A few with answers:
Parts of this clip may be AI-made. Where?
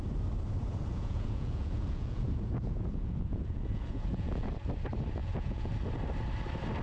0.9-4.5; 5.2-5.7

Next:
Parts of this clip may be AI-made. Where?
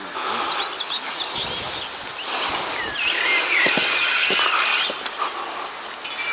none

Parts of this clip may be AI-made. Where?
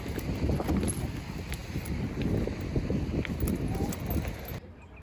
none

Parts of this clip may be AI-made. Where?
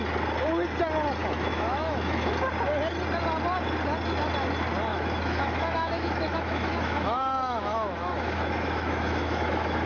1.2-2.3; 4.9-9.9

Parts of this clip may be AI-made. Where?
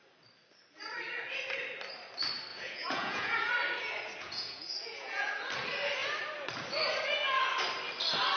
2.5-3.5; 4.2-5.3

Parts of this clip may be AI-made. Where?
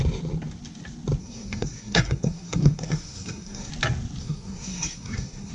1.2-3.7; 4.2-5.5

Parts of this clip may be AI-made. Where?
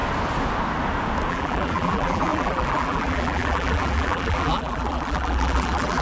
1.3-6.0